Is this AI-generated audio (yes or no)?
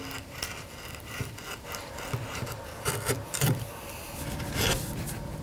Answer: no